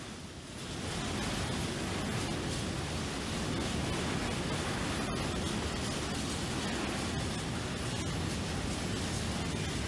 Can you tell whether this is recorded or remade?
recorded